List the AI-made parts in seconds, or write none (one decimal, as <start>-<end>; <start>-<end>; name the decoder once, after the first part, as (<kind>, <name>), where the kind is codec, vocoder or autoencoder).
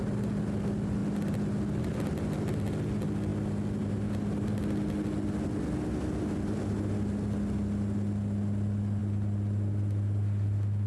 none